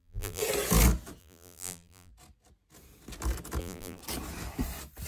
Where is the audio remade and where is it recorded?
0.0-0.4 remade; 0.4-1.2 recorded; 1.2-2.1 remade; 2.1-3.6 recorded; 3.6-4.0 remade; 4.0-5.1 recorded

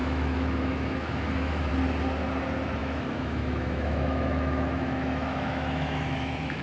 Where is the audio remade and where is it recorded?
0.0-1.7 remade; 1.7-2.8 recorded; 2.8-6.6 remade

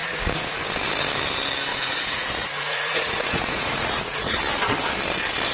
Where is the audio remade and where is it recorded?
0.0-0.6 remade; 0.6-1.7 recorded; 1.7-4.4 remade; 4.4-5.5 recorded

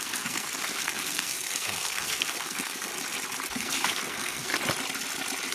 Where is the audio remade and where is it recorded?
0.0-2.9 remade; 2.9-3.5 recorded; 3.5-4.5 remade; 4.5-5.5 recorded

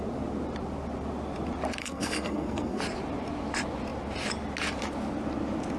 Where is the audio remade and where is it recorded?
0.0-1.8 recorded; 1.8-2.8 remade; 2.8-5.8 recorded

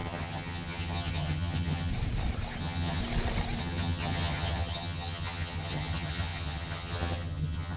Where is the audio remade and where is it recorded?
0.0-1.9 remade; 1.9-2.6 recorded; 2.6-3.0 remade; 3.0-3.6 recorded; 3.6-7.8 remade

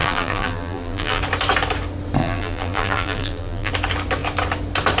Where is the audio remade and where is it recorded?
0.0-1.2 remade; 1.2-2.2 recorded; 2.2-3.7 remade; 3.7-5.0 recorded

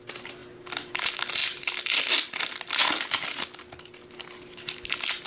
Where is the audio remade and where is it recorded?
0.0-5.3 recorded